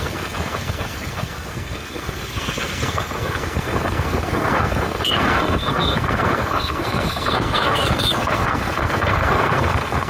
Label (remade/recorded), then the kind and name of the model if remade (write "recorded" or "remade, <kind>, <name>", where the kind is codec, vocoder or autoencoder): remade, codec, SNAC